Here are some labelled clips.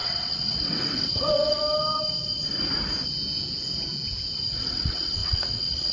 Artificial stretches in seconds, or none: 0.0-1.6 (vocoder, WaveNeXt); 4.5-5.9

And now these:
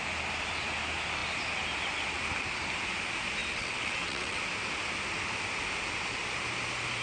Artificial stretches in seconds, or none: 3.4-4.4 (vocoder, WaveNeXt)